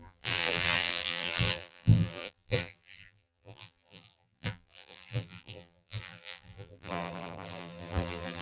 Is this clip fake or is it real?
fake